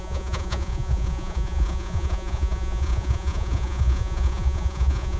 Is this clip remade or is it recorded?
remade